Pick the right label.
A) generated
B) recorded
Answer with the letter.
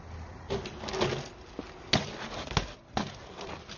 B